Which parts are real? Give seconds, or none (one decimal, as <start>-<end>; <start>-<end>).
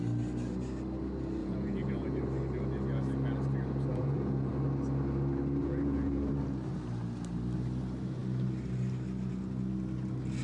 0.0-1.4; 2.2-3.9; 4.5-5.6; 6.3-10.4